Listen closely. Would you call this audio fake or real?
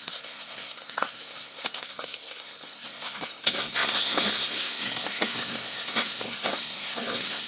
fake